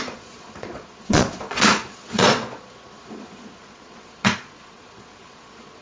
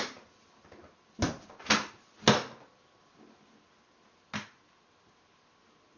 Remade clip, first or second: first